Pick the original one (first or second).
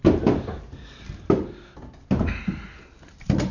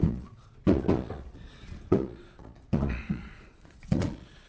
first